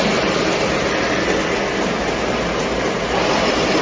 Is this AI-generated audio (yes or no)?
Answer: no